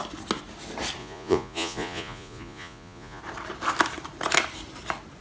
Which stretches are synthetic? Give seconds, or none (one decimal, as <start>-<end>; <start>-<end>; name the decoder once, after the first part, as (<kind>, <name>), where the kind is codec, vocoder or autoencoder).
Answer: 1.0-3.2 (vocoder, Vocos)